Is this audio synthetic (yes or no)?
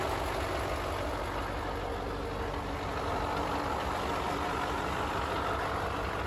no